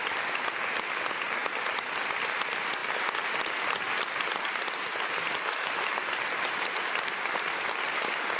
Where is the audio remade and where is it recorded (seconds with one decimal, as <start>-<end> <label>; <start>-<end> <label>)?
0.0-5.3 recorded; 5.3-5.9 remade; 5.9-8.4 recorded